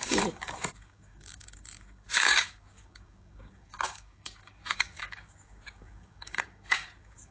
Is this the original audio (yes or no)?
no